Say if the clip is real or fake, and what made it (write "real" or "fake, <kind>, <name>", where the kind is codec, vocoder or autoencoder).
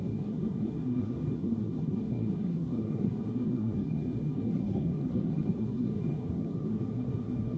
fake, codec, SNAC